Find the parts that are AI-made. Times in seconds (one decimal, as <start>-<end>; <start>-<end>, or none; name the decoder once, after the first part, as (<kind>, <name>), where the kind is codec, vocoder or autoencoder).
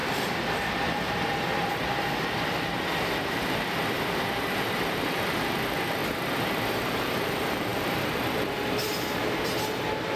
3.3-6.0 (vocoder, BigVGAN v2); 6.7-10.2